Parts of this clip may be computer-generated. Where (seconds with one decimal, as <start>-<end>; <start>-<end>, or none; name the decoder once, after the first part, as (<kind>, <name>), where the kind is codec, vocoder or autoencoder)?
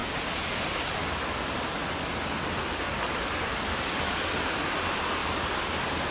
3.7-5.2 (vocoder, BigVGAN v2)